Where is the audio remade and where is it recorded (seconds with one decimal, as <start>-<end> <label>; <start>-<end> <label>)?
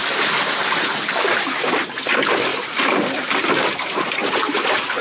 0.0-2.5 recorded; 2.5-4.3 remade; 4.3-5.0 recorded